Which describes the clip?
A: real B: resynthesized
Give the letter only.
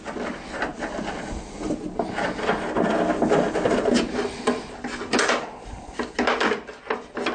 A